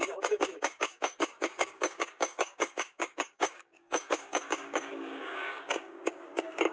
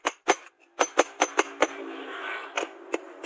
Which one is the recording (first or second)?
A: second